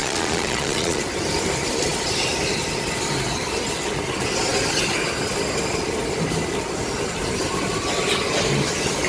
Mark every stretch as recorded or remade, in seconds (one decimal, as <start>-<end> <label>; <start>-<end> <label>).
0.0-1.0 remade; 1.0-9.1 recorded

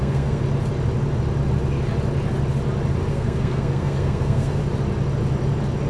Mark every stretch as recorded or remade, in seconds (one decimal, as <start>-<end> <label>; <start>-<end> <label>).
0.0-0.4 remade; 0.4-3.1 recorded; 3.1-4.6 remade; 4.6-5.9 recorded

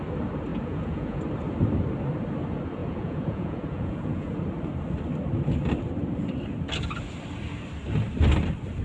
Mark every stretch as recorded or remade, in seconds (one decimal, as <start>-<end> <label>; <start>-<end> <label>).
0.0-0.5 recorded; 0.5-1.2 remade; 1.2-2.8 recorded; 2.8-4.4 remade; 4.4-8.8 recorded

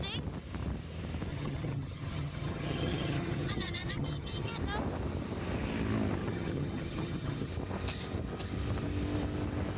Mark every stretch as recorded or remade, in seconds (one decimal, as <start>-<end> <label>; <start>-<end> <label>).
0.0-1.3 recorded; 1.3-4.6 remade; 4.6-6.2 recorded; 6.2-7.5 remade; 7.5-9.8 recorded

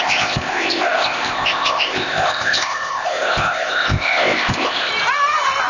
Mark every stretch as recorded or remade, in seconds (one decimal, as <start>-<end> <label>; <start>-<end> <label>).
0.0-4.9 remade; 4.9-5.7 recorded